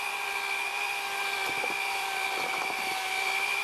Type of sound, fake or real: fake